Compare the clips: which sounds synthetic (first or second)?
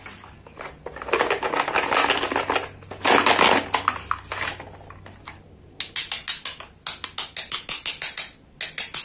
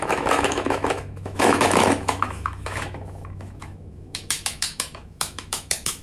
second